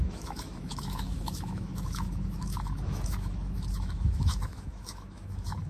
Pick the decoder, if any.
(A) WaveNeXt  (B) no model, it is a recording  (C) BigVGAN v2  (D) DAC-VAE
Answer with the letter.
D